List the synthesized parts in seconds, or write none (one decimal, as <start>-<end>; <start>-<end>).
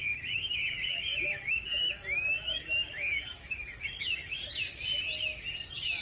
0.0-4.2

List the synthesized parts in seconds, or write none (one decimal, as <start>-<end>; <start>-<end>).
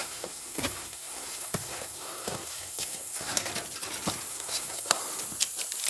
0.0-3.5; 4.3-5.0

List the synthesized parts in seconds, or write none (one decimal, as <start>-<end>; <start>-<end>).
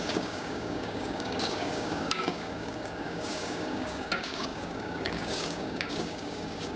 0.0-6.8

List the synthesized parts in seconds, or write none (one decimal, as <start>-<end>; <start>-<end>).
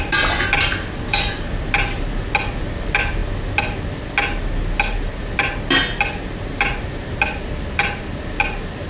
none